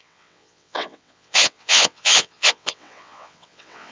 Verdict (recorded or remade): remade